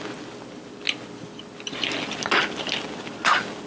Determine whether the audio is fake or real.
real